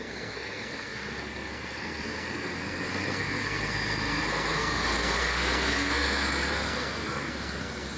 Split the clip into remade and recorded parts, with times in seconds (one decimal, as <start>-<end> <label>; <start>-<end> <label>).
0.0-8.0 remade